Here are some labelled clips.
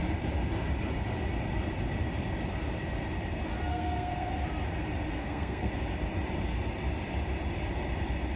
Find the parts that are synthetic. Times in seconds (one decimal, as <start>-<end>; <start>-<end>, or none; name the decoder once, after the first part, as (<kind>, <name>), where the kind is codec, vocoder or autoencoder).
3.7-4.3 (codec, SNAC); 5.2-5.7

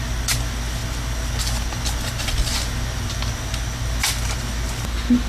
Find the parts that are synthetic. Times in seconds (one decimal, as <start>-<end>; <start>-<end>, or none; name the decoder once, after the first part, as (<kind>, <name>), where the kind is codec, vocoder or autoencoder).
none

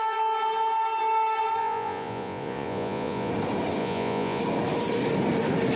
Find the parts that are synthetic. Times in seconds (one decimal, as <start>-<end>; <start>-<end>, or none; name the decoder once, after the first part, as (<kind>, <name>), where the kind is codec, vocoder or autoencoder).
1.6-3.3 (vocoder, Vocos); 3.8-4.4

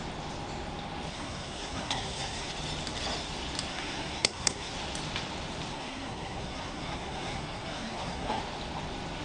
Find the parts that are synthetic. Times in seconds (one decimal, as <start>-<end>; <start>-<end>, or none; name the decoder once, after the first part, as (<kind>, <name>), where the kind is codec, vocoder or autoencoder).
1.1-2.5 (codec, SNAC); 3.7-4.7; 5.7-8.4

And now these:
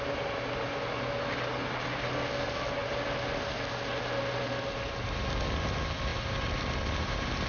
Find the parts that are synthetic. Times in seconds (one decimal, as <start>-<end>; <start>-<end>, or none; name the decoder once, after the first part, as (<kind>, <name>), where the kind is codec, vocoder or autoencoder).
none